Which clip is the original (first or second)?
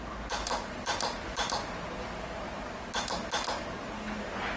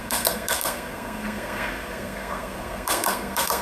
first